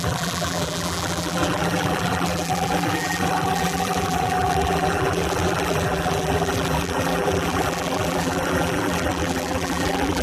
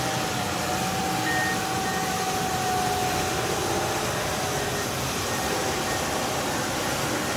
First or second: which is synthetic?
first